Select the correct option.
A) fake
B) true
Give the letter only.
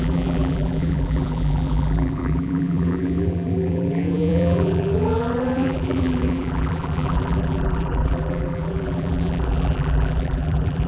A